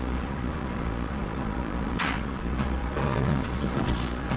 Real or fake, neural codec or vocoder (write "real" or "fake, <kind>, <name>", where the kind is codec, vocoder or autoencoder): fake, vocoder, Vocos